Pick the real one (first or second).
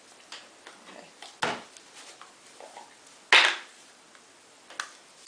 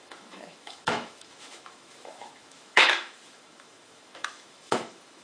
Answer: first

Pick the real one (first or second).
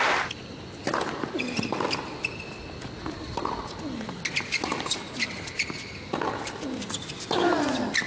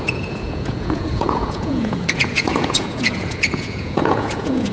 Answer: first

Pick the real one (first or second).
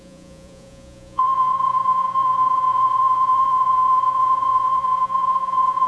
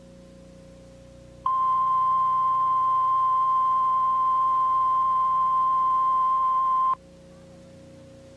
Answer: second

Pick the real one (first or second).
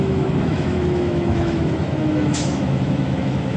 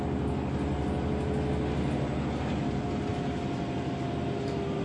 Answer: second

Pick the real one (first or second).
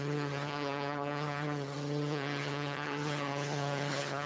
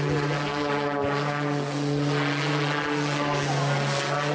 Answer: second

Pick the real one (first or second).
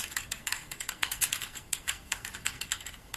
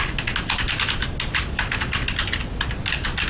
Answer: second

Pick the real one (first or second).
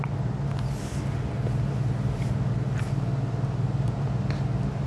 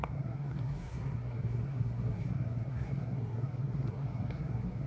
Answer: first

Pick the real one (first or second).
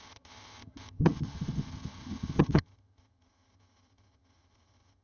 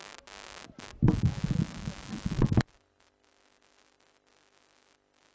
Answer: second